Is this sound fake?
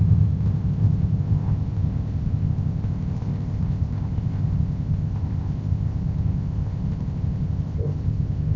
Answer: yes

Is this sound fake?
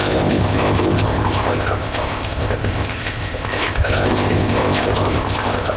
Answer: yes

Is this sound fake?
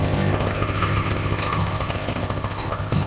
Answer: yes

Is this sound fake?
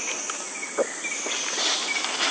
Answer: no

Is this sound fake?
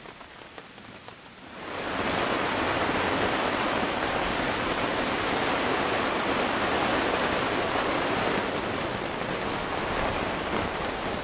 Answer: no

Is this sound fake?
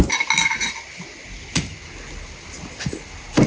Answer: no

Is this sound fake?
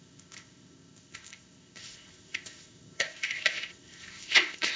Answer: yes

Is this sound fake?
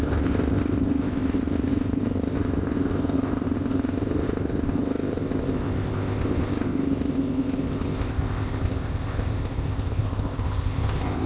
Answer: yes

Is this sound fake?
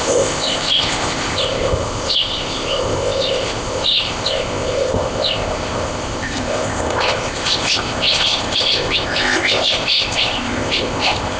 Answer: yes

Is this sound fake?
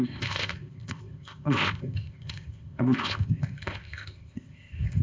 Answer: yes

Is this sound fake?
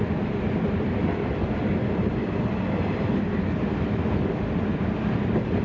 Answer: no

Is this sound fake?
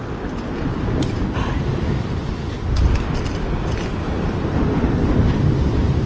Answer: no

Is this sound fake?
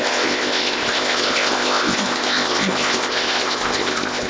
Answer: yes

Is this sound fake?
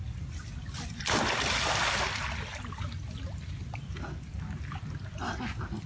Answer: no